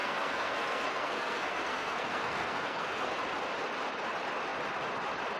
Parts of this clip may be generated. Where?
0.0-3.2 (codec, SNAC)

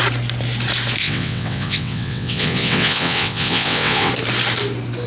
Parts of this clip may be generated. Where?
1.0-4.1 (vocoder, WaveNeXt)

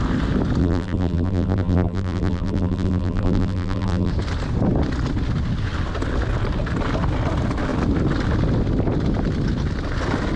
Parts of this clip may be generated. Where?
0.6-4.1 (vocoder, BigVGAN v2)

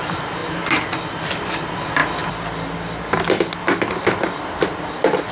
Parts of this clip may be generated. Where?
none

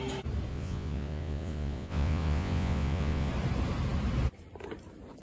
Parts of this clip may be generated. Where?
0.5-3.3 (vocoder, Vocos)

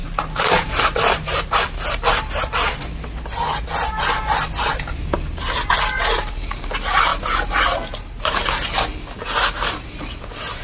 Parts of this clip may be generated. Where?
0.0-1.6 (vocoder, BigVGAN v2)

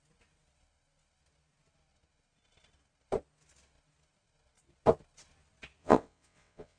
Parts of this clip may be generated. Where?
5.8-6.8 (vocoder, WaveNeXt)